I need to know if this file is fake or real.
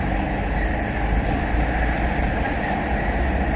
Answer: real